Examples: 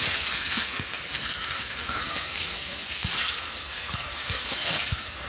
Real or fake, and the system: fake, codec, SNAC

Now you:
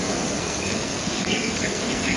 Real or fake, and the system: fake, codec, SNAC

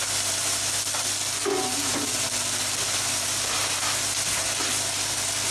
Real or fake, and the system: real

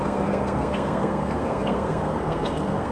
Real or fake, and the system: fake, codec, SNAC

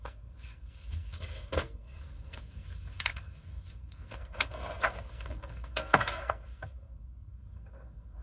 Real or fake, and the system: fake, codec, SNAC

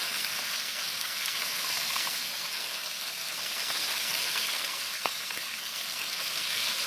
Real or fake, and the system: fake, codec, SNAC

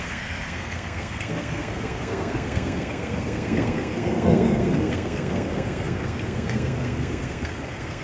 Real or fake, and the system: fake, codec, SNAC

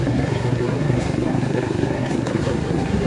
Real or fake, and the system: fake, codec, SNAC